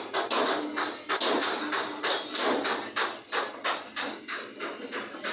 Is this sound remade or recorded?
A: recorded